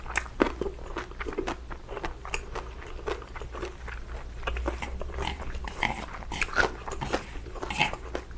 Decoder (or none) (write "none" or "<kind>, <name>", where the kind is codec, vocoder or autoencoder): none